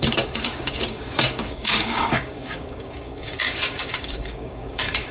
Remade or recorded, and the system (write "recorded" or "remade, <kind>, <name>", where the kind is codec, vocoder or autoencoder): remade, codec, DAC